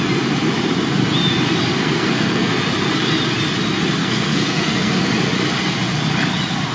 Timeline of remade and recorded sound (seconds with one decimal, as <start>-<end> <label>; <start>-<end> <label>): 0.0-1.8 recorded; 1.8-2.5 remade; 2.5-4.0 recorded; 4.0-5.0 remade; 5.0-6.7 recorded